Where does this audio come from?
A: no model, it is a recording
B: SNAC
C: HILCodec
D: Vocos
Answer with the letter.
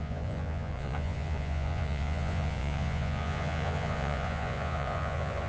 D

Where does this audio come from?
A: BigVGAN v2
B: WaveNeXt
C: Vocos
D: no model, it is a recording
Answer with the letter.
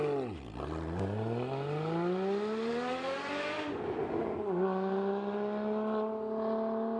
D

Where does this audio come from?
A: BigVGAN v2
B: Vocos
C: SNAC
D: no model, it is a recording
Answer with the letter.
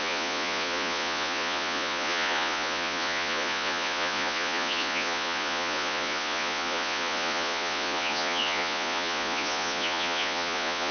B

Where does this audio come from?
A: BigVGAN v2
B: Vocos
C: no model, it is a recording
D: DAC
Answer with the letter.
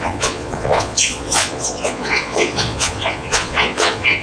B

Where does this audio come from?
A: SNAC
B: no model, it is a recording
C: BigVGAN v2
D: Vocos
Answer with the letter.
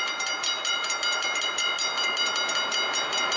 B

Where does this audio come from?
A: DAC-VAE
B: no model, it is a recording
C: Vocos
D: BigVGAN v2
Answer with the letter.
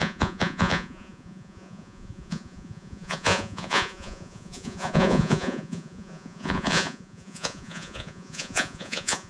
C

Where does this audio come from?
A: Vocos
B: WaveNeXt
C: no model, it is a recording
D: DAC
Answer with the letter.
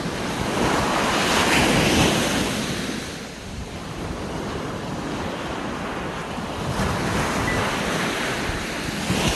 C